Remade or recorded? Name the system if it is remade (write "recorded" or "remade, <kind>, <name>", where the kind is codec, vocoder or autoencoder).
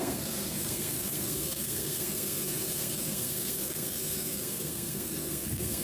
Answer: remade, codec, SNAC